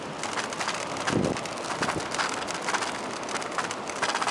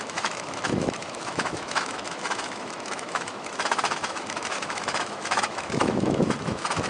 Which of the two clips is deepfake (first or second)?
second